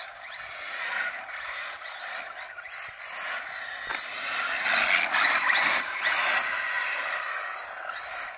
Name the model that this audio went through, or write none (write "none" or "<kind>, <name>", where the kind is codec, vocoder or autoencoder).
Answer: none